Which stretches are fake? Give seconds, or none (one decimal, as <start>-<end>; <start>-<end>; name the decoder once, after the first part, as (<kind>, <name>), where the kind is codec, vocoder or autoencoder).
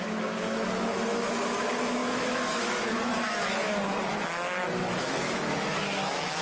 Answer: 0.0-6.4 (autoencoder, DAC-VAE)